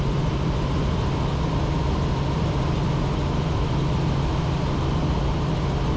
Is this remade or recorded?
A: recorded